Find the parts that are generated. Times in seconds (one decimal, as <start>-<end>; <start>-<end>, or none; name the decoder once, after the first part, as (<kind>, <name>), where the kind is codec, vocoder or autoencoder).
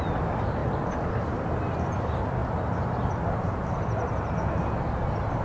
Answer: none